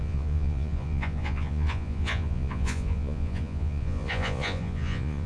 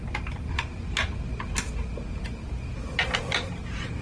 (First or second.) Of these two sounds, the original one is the second